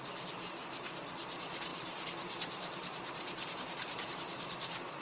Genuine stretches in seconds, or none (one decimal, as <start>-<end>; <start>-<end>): none